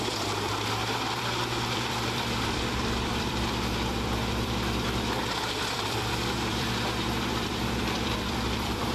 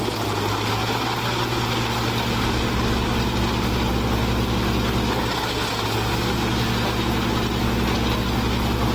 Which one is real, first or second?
second